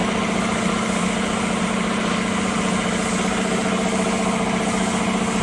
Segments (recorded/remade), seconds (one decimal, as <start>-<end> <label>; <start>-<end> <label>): 0.0-5.4 recorded